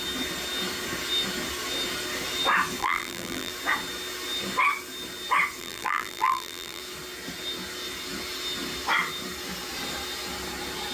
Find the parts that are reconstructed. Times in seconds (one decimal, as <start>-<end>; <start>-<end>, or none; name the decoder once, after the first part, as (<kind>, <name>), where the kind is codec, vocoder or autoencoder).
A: 2.8-3.5 (vocoder, BigVGAN v2); 5.6-6.8